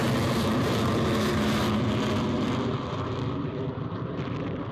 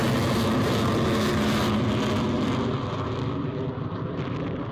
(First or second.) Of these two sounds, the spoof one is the first